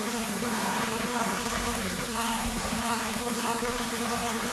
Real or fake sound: fake